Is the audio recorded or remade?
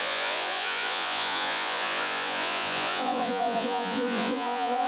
remade